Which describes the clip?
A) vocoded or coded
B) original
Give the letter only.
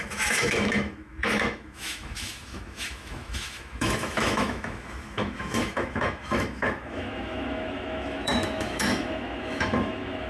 A